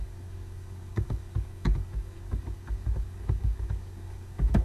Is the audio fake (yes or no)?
yes